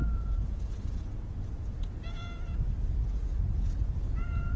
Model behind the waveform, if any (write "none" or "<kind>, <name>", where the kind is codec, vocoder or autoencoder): vocoder, Vocos